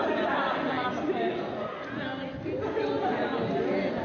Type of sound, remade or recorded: recorded